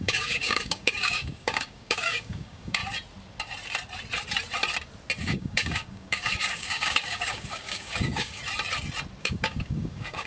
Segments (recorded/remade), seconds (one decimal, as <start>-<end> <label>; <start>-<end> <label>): 0.0-2.8 remade; 2.8-5.2 recorded; 5.2-8.4 remade; 8.4-9.2 recorded; 9.2-10.3 remade